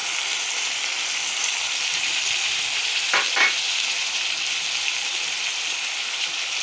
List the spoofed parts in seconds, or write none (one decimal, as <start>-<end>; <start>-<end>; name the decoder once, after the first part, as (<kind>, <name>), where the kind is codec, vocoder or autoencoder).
none